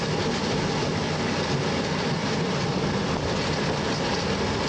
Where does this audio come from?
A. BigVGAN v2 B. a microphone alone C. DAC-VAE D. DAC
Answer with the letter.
B